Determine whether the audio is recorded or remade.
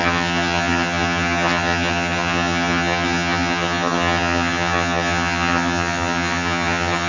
remade